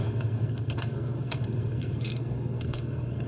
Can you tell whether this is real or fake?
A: fake